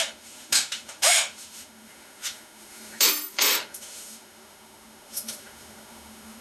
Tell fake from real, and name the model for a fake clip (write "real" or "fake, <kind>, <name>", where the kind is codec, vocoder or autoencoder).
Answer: fake, autoencoder, DAC-VAE